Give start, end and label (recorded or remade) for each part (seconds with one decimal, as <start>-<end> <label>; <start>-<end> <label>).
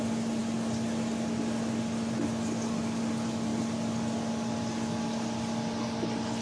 0.0-6.4 recorded